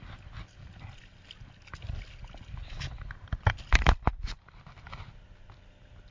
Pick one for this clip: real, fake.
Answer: real